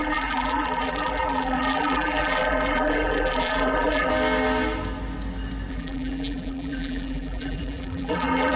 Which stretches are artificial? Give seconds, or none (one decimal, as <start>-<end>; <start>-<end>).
0.0-4.1; 5.7-8.6